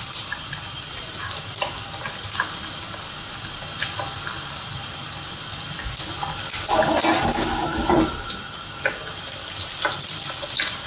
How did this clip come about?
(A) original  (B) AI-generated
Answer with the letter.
A